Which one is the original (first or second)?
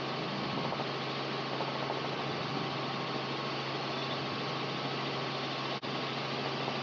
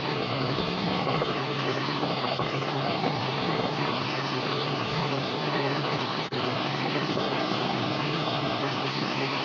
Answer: first